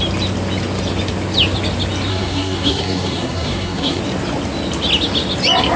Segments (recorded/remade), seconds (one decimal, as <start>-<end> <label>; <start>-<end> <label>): 0.0-2.1 recorded; 2.1-4.0 remade; 4.0-5.8 recorded